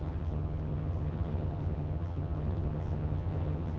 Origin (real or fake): fake